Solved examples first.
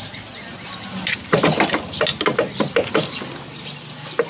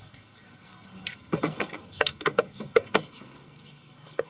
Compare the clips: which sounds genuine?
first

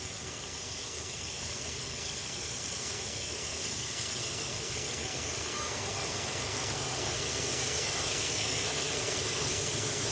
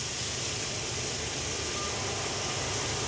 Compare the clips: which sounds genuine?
second